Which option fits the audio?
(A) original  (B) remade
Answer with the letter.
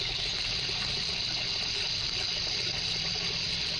A